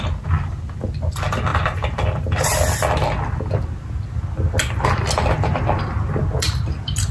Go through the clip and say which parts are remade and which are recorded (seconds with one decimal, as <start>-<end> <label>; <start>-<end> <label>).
0.0-7.1 recorded